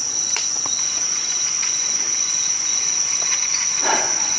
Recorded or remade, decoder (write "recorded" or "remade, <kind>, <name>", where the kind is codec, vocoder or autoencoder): remade, vocoder, Vocos